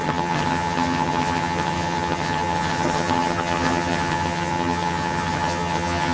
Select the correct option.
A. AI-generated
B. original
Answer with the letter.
A